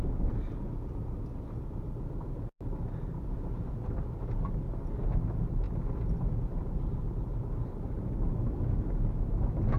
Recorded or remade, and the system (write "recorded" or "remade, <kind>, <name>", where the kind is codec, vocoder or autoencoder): recorded